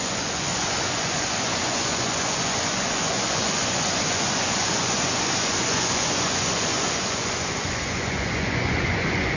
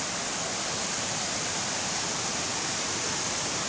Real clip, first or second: second